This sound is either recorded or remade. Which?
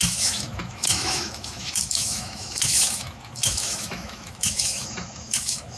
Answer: remade